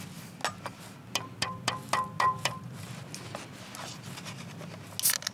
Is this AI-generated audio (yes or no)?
no